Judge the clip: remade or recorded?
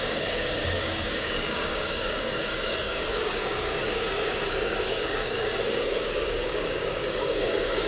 remade